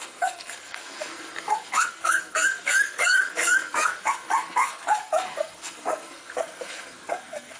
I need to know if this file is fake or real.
fake